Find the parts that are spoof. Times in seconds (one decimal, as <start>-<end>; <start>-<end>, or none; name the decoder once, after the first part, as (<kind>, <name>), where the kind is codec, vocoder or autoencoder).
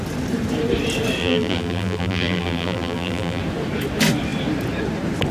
1.2-3.4 (vocoder, BigVGAN v2)